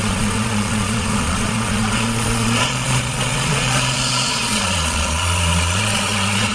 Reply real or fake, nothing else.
fake